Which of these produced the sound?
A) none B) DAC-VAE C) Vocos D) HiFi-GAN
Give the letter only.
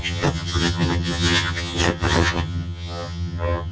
D